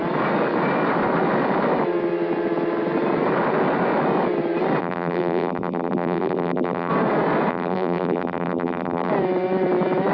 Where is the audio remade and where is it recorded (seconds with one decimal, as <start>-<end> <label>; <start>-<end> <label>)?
0.0-4.8 recorded; 4.8-6.9 remade; 6.9-7.5 recorded; 7.5-9.1 remade; 9.1-10.1 recorded